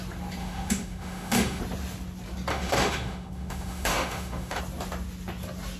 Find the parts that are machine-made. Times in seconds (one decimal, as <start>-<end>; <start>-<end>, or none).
0.4-1.6; 2.5-4.6